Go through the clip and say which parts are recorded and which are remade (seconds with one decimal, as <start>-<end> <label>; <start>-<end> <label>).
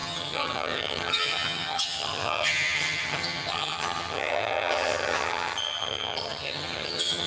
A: 0.0-7.3 remade